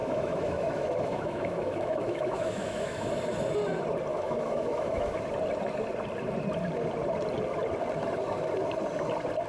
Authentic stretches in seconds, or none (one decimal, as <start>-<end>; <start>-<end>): 3.1-4.1; 5.2-9.5